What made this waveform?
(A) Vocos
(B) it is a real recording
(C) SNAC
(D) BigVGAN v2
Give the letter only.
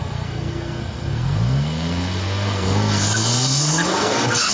C